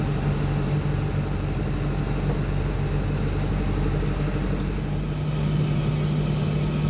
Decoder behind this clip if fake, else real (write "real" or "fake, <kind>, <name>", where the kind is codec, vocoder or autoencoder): real